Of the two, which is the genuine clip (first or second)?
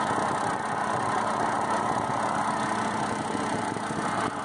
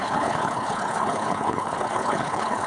first